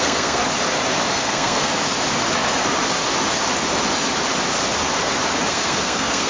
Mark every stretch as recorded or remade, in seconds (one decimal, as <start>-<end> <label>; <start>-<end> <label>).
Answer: 0.0-0.4 remade; 0.4-1.1 recorded; 1.1-1.7 remade; 1.7-5.5 recorded; 5.5-6.3 remade